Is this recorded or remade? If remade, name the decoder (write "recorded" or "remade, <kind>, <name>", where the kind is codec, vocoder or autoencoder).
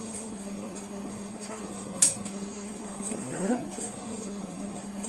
remade, codec, SNAC